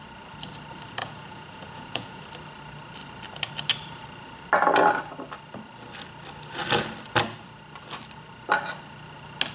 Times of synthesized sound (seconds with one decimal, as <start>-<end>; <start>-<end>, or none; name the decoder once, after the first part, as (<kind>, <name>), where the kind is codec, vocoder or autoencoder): 1.0-2.2 (vocoder, Vocos)